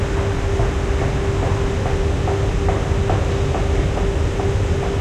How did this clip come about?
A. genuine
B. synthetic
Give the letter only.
A